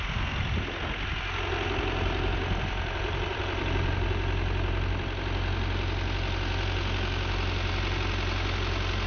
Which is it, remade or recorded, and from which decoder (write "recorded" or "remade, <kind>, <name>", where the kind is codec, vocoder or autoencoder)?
recorded